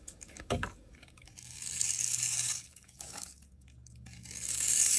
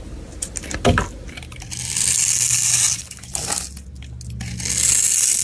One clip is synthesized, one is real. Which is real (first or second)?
second